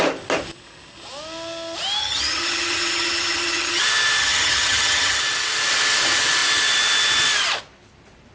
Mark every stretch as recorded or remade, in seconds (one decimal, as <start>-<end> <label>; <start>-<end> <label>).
0.0-2.0 recorded; 2.0-3.8 remade; 3.8-4.2 recorded; 4.2-5.2 remade; 5.2-8.3 recorded